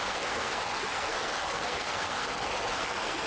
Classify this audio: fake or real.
fake